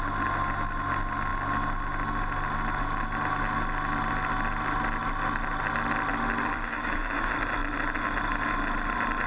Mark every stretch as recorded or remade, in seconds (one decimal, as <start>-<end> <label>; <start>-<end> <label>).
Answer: 0.0-6.7 recorded; 6.7-7.3 remade; 7.3-9.3 recorded